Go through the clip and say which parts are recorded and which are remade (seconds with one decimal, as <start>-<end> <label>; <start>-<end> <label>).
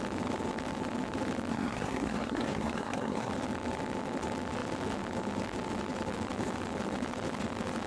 0.0-1.5 recorded; 1.5-3.3 remade; 3.3-7.9 recorded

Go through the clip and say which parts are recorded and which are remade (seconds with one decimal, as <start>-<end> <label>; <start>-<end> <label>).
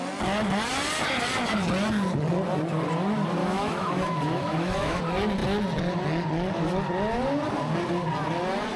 0.0-3.4 recorded; 3.4-5.0 remade; 5.0-8.8 recorded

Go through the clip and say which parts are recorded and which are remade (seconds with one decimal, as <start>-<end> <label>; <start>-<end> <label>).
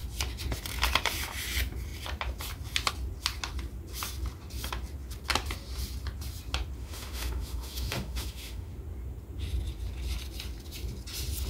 0.0-6.8 recorded; 6.8-8.7 remade; 8.7-11.5 recorded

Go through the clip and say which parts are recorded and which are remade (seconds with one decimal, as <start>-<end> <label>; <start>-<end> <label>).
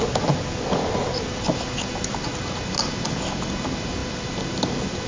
0.0-5.1 recorded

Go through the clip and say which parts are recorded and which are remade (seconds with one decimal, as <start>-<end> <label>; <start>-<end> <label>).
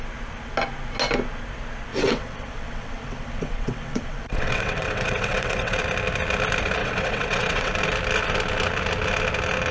0.0-1.9 recorded; 1.9-5.8 remade; 5.8-6.8 recorded; 6.8-7.7 remade; 7.7-9.7 recorded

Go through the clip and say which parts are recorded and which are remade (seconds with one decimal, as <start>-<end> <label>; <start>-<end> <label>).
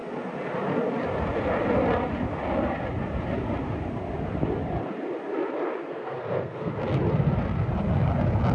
0.0-5.8 recorded; 5.8-6.7 remade; 6.7-8.5 recorded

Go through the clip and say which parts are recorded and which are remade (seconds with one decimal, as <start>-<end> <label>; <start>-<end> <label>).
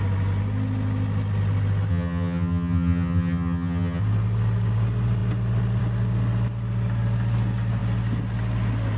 0.0-1.9 recorded; 1.9-4.0 remade; 4.0-9.0 recorded